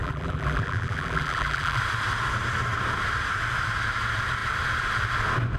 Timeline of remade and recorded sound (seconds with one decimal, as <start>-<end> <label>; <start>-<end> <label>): 0.0-1.8 remade; 1.8-5.6 recorded